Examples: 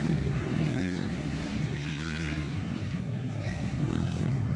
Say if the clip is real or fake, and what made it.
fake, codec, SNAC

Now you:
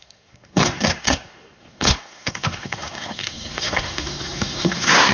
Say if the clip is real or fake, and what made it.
fake, codec, SNAC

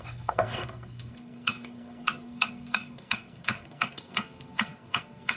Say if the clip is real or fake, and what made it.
fake, codec, SNAC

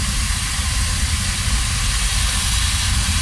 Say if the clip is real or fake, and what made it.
real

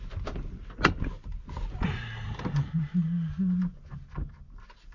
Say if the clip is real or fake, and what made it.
real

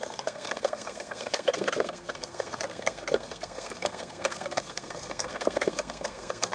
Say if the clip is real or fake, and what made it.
fake, codec, SNAC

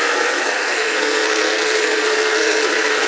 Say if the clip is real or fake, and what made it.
fake, codec, SNAC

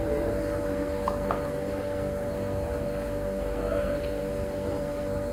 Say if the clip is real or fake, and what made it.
fake, codec, SNAC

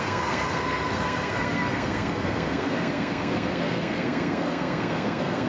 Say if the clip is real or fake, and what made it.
fake, codec, SNAC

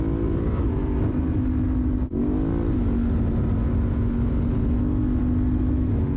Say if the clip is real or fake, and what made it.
real